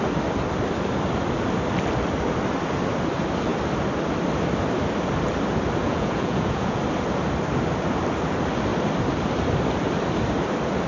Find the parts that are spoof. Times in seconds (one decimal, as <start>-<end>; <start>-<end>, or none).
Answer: 5.8-6.8

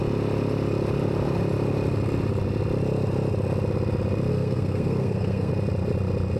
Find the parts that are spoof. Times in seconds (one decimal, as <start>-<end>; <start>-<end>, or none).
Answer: 4.3-5.5

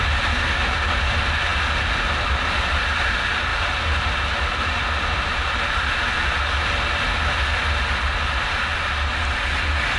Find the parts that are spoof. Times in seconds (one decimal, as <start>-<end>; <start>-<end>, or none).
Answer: none

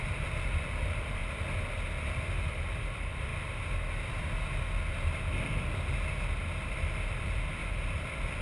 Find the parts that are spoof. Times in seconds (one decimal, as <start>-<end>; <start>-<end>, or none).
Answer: 0.0-1.2; 2.3-3.3; 6.7-7.6